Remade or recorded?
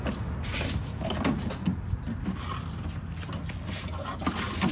recorded